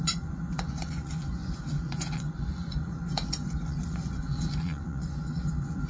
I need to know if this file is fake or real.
fake